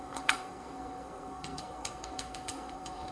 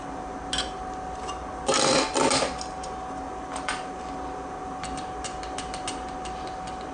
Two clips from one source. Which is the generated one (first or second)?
first